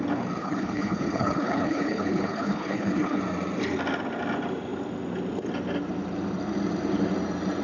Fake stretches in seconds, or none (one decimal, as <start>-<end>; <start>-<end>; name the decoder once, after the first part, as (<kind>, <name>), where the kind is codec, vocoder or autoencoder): 0.4-3.2 (codec, HILCodec)